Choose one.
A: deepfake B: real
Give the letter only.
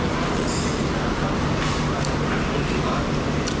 B